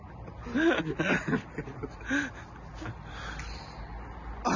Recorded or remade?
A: recorded